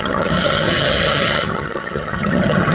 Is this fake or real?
fake